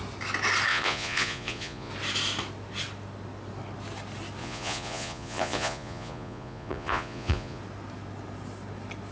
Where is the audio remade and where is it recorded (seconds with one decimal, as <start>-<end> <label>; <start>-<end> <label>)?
0.0-0.7 recorded; 0.7-1.9 remade; 1.9-4.4 recorded; 4.4-7.6 remade; 7.6-9.1 recorded